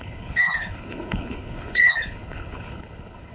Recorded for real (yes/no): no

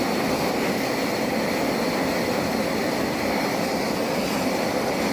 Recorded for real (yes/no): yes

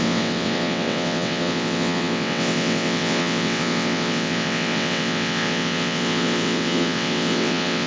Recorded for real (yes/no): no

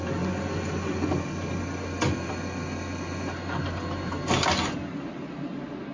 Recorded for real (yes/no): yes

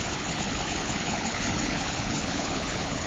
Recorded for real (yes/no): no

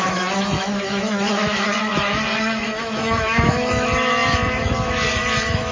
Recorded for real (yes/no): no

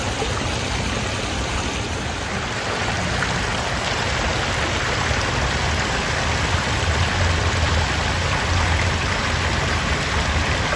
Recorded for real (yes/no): yes